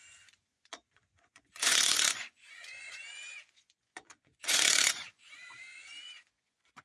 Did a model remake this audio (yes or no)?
yes